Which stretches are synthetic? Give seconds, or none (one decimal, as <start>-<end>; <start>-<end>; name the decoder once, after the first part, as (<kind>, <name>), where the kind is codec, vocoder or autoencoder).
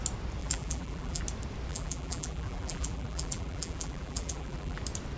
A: 0.4-1.2 (vocoder, BigVGAN v2); 1.7-4.8